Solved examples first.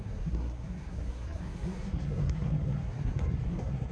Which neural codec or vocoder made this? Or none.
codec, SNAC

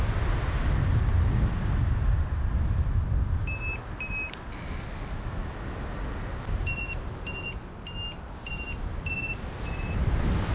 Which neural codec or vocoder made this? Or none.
none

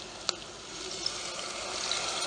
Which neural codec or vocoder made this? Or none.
none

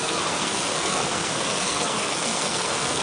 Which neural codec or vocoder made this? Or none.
codec, SNAC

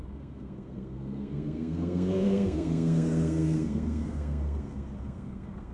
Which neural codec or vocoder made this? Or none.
codec, SNAC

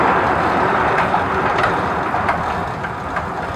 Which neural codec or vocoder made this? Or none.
none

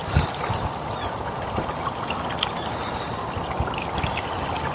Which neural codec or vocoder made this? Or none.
none